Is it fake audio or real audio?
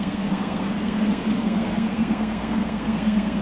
fake